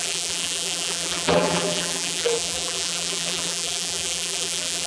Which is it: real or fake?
fake